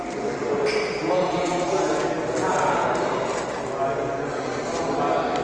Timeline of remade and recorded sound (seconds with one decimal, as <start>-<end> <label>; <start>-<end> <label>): 0.0-1.0 recorded; 1.0-2.0 remade; 2.0-2.4 recorded; 2.4-2.9 remade; 2.9-5.4 recorded